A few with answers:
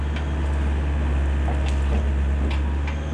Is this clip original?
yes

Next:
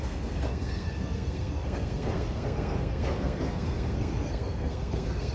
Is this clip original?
no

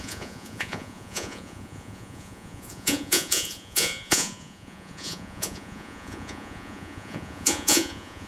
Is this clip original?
no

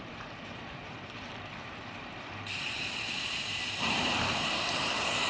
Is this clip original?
no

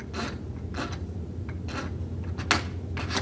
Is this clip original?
yes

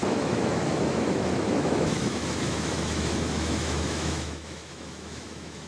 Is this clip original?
no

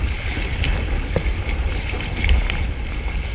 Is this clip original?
yes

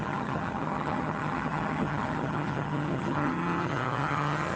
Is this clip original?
no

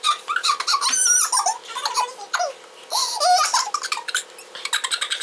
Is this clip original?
yes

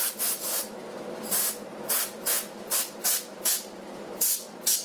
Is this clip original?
yes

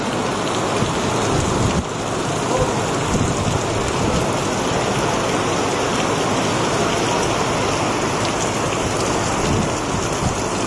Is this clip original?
yes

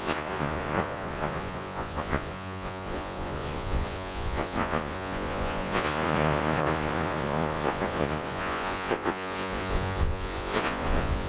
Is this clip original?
no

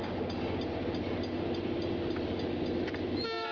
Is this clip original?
yes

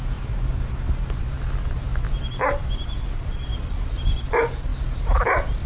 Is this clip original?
yes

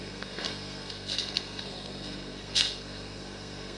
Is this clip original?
no